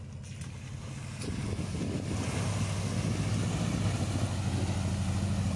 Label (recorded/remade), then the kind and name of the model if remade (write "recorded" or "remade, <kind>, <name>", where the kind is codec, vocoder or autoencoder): recorded